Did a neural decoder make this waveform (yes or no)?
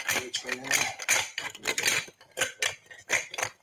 no